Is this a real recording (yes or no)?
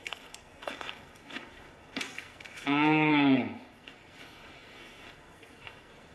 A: no